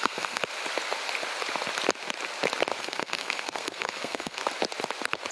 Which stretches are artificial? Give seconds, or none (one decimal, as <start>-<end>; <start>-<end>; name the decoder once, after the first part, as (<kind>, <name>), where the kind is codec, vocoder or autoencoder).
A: 0.0-0.4 (codec, SNAC); 2.8-4.4